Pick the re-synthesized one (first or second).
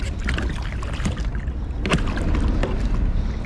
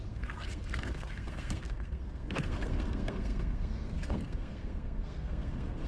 second